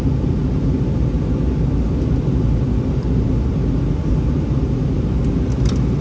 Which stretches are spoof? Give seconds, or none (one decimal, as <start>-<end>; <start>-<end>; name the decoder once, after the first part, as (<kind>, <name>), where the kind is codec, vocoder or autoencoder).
none